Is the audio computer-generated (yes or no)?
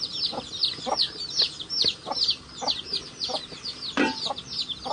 no